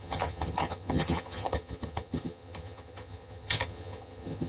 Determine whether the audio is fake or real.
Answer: fake